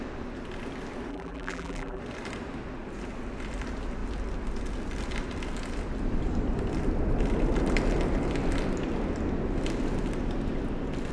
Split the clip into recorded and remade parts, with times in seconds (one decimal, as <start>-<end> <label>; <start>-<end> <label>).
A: 0.0-1.1 recorded; 1.1-2.0 remade; 2.0-11.1 recorded